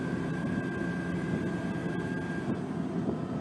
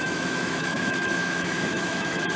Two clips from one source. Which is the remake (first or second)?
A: second